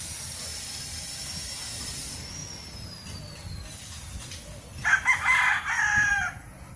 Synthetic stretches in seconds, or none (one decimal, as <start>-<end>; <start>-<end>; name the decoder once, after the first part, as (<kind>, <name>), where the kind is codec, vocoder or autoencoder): 0.5-1.2 (vocoder, BigVGAN v2); 5.9-6.8